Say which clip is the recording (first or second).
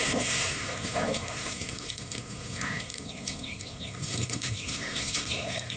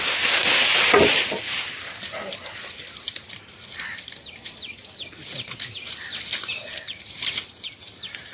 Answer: second